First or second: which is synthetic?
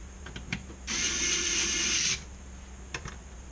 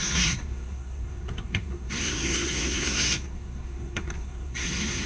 second